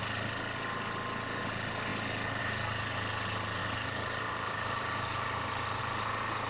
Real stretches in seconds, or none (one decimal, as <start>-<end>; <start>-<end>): 0.0-3.6; 5.8-6.5